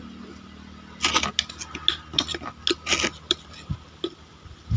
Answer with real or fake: real